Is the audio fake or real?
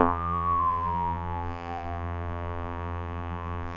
fake